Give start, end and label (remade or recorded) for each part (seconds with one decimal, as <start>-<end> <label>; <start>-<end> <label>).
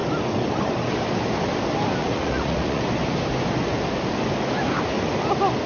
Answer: 0.0-2.0 recorded; 2.0-2.8 remade; 2.8-5.7 recorded